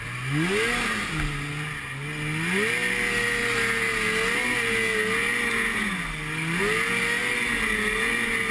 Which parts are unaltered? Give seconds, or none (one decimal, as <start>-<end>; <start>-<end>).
0.0-8.5

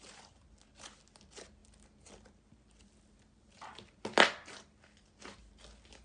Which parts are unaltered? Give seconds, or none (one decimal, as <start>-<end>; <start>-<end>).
0.0-6.0